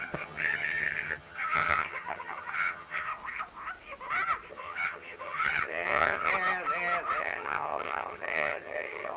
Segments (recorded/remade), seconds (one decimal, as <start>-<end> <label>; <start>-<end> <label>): 0.0-3.1 remade; 3.1-4.5 recorded; 4.5-6.3 remade; 6.3-7.2 recorded; 7.2-9.2 remade